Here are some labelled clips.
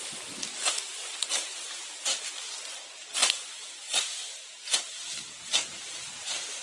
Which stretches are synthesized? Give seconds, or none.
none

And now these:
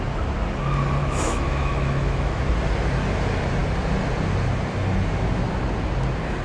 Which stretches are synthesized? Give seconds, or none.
1.0-2.4 (autoencoder, DAC-VAE)

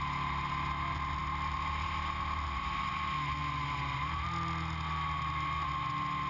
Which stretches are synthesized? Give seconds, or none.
none